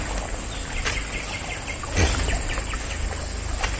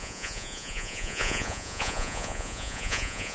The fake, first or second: second